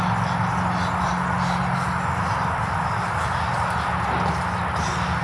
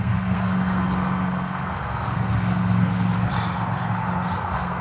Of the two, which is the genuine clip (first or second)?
first